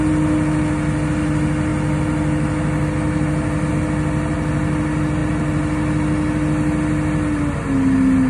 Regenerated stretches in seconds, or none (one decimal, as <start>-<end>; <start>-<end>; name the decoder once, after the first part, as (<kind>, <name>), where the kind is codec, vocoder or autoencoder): none